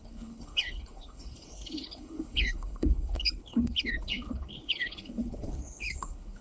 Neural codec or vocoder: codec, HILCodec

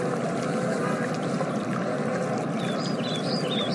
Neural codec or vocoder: none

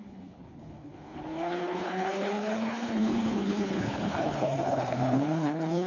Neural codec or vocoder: codec, HILCodec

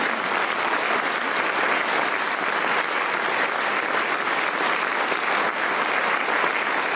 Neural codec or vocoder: none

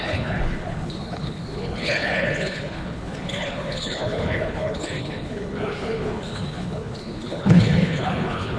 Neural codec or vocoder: codec, HILCodec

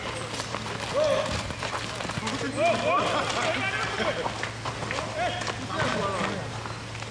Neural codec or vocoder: none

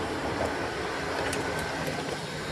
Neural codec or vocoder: none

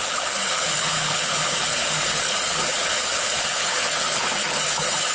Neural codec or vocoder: codec, HILCodec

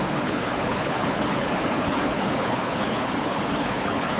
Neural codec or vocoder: codec, HILCodec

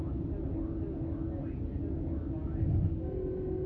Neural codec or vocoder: none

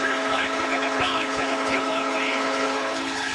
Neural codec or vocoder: codec, HILCodec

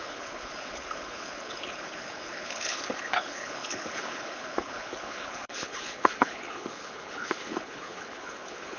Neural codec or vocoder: codec, HILCodec